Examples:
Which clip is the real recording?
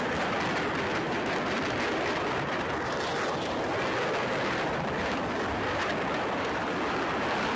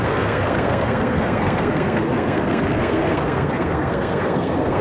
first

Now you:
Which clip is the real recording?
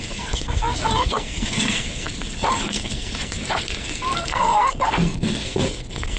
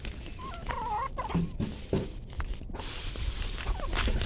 second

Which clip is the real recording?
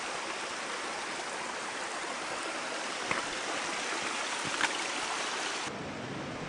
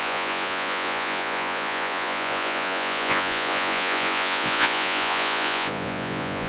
first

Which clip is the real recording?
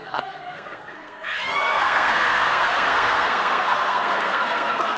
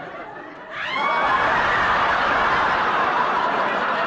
second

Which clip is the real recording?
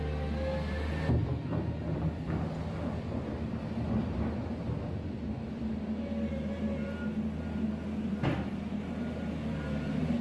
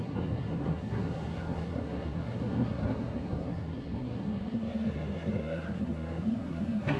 first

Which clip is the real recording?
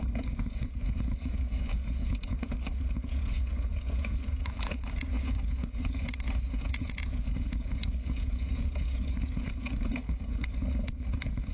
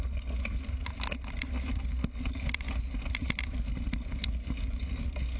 second